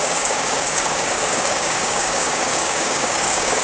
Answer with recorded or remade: remade